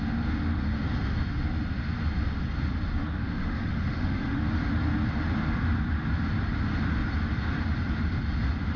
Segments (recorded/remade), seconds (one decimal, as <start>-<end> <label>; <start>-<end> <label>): 0.0-3.2 recorded; 3.2-4.4 remade; 4.4-8.8 recorded